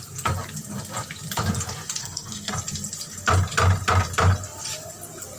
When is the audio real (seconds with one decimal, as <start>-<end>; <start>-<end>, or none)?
0.0-2.0; 2.5-5.4